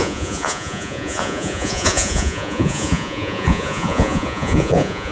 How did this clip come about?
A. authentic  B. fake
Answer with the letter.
B